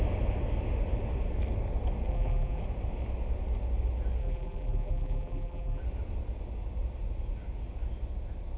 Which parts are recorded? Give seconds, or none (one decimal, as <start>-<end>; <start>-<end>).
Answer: 0.0-2.1; 2.6-4.2; 5.8-8.6

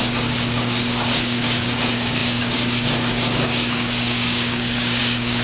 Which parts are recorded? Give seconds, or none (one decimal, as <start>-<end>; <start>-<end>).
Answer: none

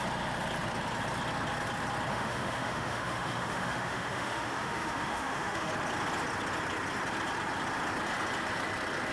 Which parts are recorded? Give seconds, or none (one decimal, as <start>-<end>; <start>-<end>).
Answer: 0.0-2.1; 5.7-9.1

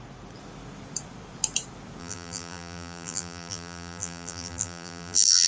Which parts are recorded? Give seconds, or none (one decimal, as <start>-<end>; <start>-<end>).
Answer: 0.0-2.0

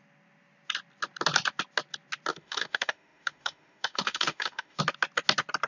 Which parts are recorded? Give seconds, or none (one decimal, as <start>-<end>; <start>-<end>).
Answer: 0.0-2.3; 4.8-5.7

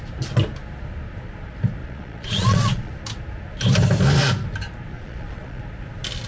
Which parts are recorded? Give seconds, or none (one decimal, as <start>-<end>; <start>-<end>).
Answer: 0.0-1.8; 2.9-4.9; 5.6-6.3

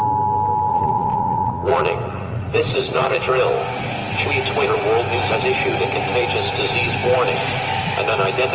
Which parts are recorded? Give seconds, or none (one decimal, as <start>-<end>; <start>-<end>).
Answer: 0.0-0.7; 3.3-8.5

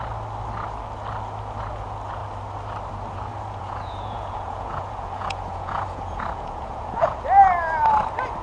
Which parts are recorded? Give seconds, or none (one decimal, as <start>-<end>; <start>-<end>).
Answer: 0.0-3.3; 7.2-8.4